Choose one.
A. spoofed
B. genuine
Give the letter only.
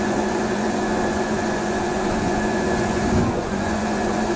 A